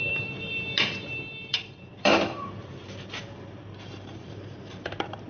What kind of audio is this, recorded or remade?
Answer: remade